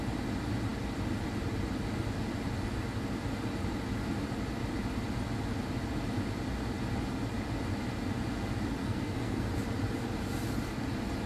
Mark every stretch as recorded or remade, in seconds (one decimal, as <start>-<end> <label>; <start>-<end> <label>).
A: 0.0-8.8 recorded; 8.8-9.5 remade; 9.5-11.3 recorded